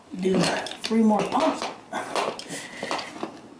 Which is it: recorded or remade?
recorded